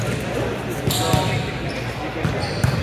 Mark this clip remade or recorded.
recorded